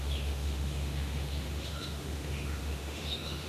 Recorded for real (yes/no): no